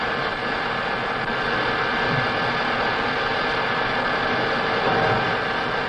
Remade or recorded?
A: recorded